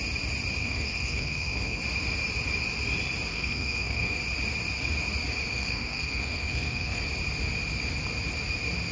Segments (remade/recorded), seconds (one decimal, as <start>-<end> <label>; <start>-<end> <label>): 0.0-0.6 recorded; 0.6-1.8 remade; 1.8-3.3 recorded; 3.3-4.2 remade; 4.2-5.5 recorded; 5.5-7.0 remade; 7.0-8.9 recorded